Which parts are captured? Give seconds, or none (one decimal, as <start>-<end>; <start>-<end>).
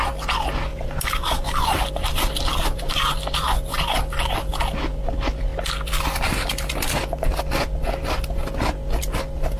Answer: 0.0-0.7; 3.1-3.7; 4.5-9.6